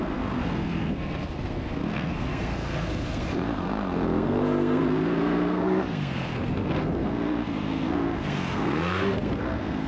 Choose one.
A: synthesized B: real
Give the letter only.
A